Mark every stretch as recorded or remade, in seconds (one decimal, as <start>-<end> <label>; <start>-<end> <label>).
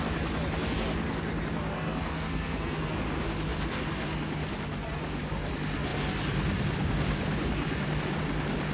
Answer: 0.0-1.7 recorded; 1.7-2.9 remade; 2.9-8.7 recorded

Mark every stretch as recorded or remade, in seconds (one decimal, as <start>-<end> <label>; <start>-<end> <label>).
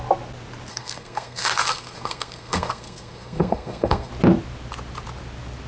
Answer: 0.0-0.7 recorded; 0.7-4.1 remade; 4.1-5.7 recorded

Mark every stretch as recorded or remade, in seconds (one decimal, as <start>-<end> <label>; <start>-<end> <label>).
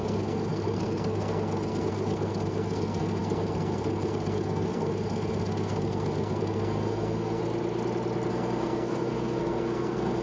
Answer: 0.0-7.4 remade; 7.4-8.3 recorded; 8.3-10.2 remade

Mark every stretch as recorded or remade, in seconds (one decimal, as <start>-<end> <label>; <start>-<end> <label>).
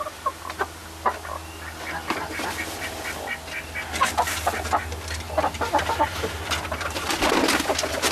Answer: 0.0-8.1 recorded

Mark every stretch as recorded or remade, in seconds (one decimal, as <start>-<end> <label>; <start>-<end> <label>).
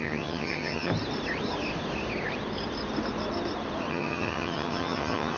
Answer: 0.0-0.9 remade; 0.9-3.9 recorded; 3.9-5.4 remade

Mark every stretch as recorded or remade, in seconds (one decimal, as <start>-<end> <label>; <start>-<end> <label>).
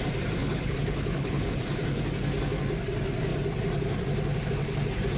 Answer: 0.0-0.4 recorded; 0.4-1.6 remade; 1.6-5.2 recorded